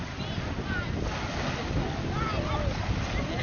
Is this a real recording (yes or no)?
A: yes